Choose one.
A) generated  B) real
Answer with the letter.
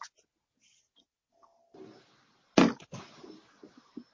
B